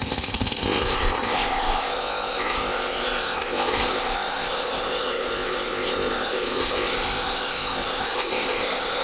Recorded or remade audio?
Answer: remade